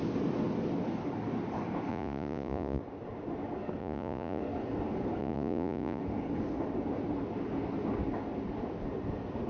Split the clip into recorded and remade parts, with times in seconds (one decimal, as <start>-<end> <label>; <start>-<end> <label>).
0.0-1.9 recorded; 1.9-2.8 remade; 2.8-3.8 recorded; 3.8-4.4 remade; 4.4-5.2 recorded; 5.2-6.0 remade; 6.0-9.5 recorded